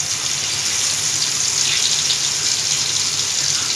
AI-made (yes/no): no